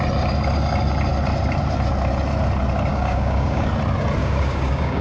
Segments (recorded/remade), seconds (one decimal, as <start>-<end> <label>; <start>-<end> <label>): 0.0-2.9 recorded; 2.9-3.7 remade; 3.7-4.2 recorded; 4.2-5.0 remade